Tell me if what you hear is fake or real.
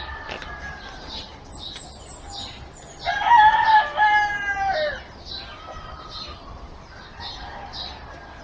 real